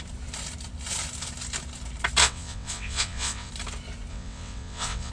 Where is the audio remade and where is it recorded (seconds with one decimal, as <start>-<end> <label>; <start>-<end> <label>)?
0.0-2.2 recorded; 2.2-3.5 remade; 3.5-4.1 recorded; 4.1-5.1 remade